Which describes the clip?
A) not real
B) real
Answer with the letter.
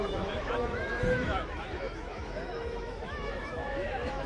A